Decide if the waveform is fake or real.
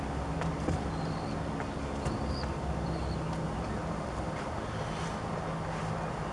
real